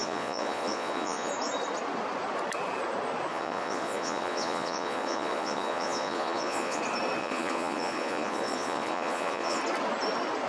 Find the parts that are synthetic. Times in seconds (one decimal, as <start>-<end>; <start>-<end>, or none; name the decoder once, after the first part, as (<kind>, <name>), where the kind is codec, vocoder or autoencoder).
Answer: 0.0-1.3 (vocoder, Vocos); 3.3-6.8; 7.2-9.6